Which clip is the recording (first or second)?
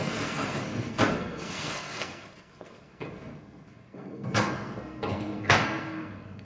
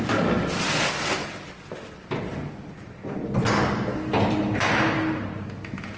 second